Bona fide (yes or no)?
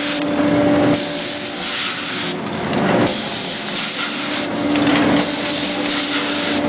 yes